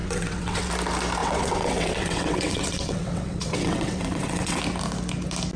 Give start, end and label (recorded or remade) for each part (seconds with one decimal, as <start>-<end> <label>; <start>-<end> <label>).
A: 0.0-0.7 remade; 0.7-1.2 recorded; 1.2-4.6 remade; 4.6-5.6 recorded